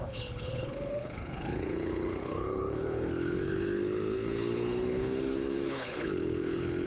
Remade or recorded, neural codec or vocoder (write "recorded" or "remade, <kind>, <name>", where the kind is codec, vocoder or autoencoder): remade, codec, HILCodec